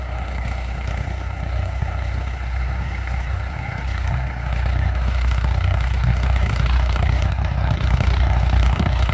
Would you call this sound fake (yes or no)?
yes